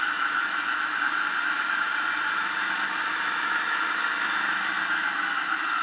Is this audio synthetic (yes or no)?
yes